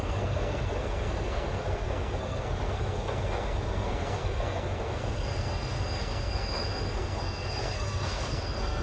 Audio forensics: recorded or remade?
remade